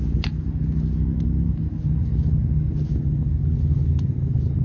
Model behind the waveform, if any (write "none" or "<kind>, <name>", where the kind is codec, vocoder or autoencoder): none